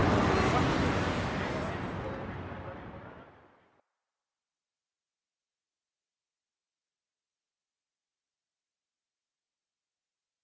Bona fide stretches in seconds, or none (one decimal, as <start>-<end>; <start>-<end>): 0.0-10.4